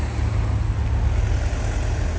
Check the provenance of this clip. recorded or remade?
recorded